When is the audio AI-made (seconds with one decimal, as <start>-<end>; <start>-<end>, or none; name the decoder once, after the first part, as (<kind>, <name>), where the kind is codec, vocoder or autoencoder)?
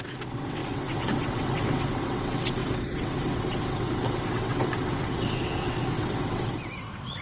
0.0-7.2 (vocoder, WaveNeXt)